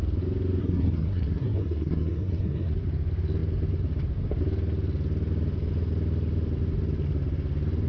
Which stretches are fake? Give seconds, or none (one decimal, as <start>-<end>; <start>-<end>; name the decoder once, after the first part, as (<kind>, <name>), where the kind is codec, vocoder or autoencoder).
0.6-2.7 (codec, SNAC)